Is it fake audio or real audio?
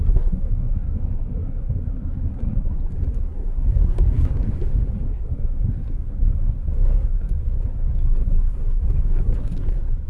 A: fake